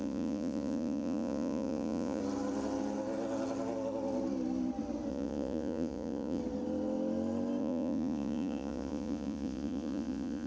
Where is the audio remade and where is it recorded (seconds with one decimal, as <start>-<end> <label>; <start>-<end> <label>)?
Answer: 0.0-2.2 remade; 2.2-5.1 recorded; 5.1-6.4 remade; 6.4-7.6 recorded; 7.6-10.5 remade

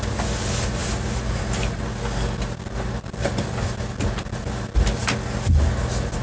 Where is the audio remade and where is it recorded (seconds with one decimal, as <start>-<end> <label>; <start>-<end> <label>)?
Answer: 0.0-6.2 recorded

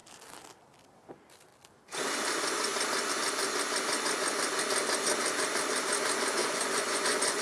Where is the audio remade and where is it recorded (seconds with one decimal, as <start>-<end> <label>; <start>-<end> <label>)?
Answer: 0.0-6.4 recorded; 6.4-7.4 remade

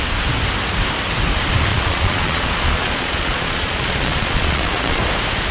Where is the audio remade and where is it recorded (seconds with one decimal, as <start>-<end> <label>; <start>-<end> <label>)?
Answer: 0.0-1.7 recorded; 1.7-5.0 remade; 5.0-5.5 recorded